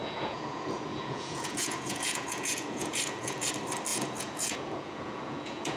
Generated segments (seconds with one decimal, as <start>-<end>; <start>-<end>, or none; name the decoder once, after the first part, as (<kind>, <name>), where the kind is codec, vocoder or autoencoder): 0.0-3.5 (vocoder, Vocos); 3.9-5.8